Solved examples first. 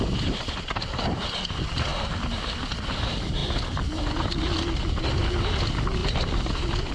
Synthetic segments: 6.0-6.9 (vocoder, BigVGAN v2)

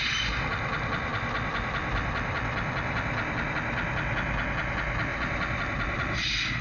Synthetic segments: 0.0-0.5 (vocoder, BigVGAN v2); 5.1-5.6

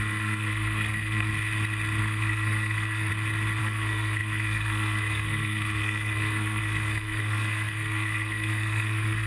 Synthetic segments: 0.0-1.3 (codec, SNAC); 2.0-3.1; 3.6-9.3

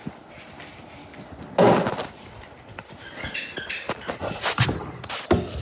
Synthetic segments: 4.2-4.8 (vocoder, BigVGAN v2)

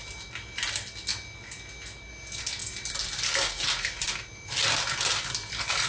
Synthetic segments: none

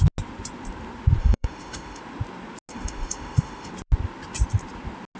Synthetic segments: 1.2-2.0 (autoencoder, DAC-VAE); 2.7-3.7

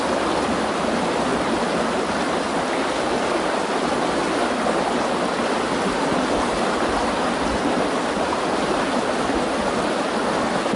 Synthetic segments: none